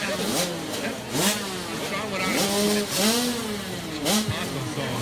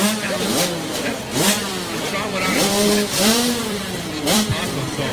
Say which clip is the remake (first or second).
second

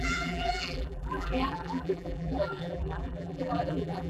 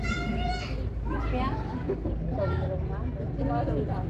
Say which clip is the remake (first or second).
first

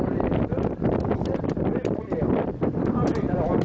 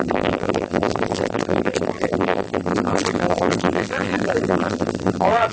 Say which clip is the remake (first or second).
second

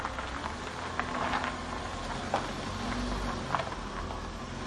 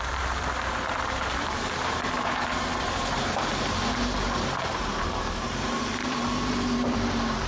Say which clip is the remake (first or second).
second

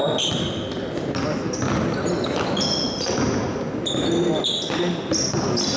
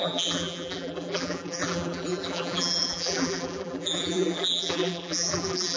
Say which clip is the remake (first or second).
second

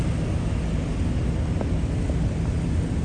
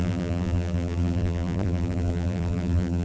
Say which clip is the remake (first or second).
second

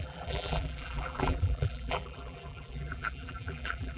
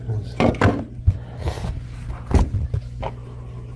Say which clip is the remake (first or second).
first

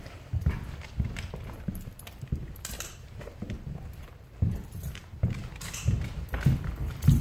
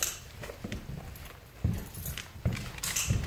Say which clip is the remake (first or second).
first